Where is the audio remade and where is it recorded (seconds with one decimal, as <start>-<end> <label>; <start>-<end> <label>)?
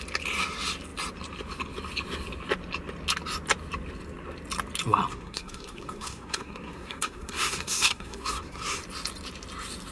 0.0-5.1 recorded; 5.1-8.8 remade; 8.8-9.9 recorded